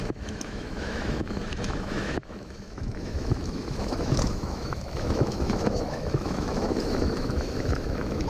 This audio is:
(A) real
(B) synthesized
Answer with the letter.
B